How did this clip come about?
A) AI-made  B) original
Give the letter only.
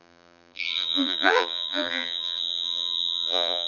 A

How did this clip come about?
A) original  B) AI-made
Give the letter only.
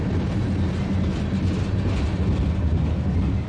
A